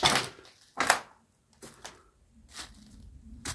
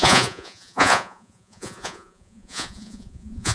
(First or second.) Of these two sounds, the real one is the first